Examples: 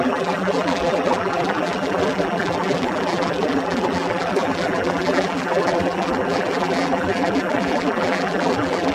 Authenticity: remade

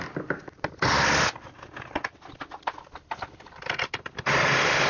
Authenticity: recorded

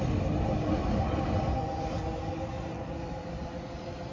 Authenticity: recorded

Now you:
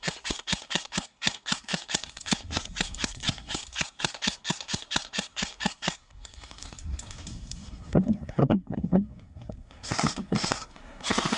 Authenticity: remade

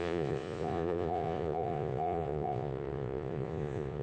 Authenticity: remade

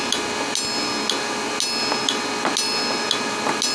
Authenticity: recorded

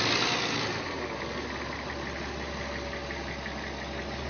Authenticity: recorded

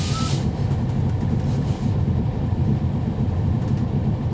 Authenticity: recorded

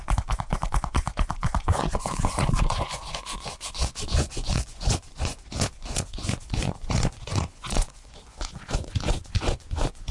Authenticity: remade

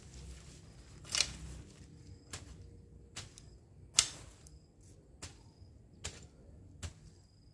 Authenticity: recorded